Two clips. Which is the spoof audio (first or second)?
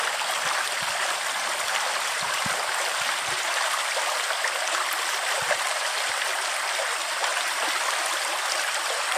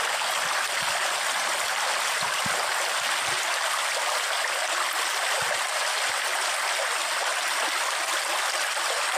first